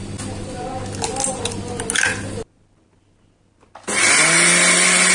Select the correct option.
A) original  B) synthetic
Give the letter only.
A